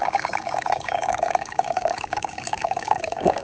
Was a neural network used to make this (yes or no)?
yes